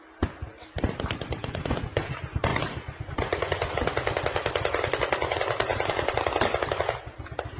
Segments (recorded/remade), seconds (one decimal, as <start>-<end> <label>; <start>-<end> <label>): 0.0-1.4 recorded; 1.4-2.1 remade; 2.1-2.5 recorded; 2.5-3.7 remade; 3.7-7.6 recorded